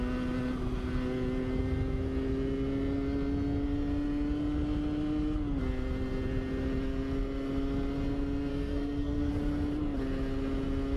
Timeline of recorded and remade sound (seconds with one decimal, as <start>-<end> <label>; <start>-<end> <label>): 0.0-8.5 recorded; 8.5-9.3 remade; 9.3-11.0 recorded